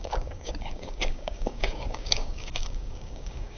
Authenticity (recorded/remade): remade